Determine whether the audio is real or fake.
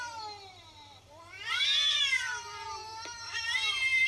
fake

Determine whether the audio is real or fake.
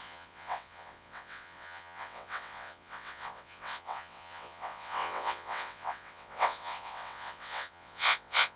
fake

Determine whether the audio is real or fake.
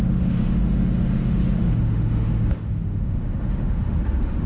fake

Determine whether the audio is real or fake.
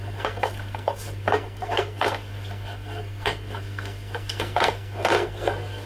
fake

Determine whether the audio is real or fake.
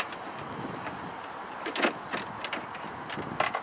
real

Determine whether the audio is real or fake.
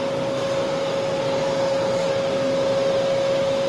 real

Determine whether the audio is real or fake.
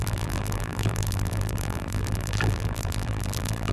fake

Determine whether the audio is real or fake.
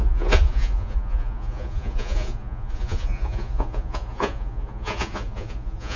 fake